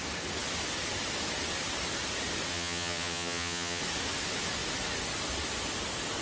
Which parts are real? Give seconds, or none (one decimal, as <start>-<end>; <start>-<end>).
0.0-2.5; 3.8-6.2